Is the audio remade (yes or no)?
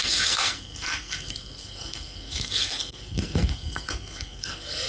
yes